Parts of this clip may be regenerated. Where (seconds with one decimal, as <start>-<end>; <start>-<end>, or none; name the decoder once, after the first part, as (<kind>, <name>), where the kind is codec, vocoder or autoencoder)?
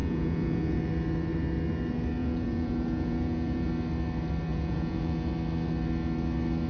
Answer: 0.0-0.8 (vocoder, Vocos); 2.2-3.7; 4.5-5.3